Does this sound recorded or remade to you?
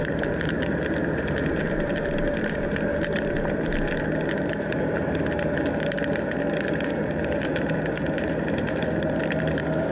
remade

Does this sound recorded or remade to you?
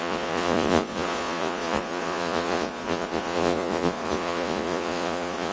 remade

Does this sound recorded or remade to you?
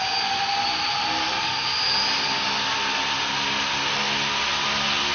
recorded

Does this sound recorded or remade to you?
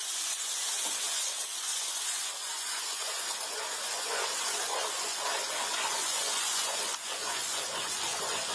remade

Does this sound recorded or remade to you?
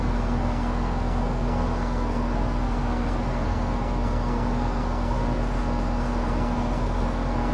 remade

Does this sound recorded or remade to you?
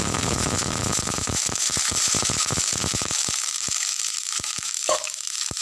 remade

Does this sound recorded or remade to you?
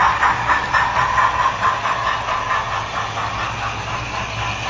recorded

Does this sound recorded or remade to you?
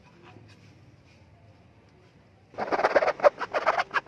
recorded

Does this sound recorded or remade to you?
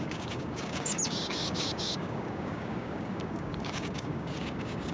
remade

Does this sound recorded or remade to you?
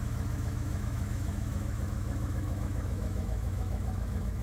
remade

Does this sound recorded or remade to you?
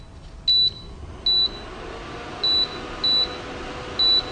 recorded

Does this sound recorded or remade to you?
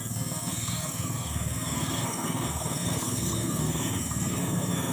remade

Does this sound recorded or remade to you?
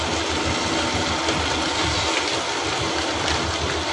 recorded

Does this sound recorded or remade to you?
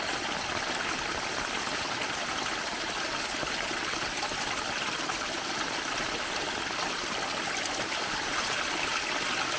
recorded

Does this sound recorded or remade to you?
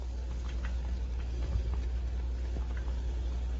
recorded